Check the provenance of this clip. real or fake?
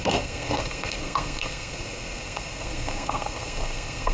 fake